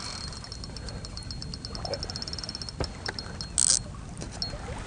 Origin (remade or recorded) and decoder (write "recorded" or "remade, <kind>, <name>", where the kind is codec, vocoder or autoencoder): recorded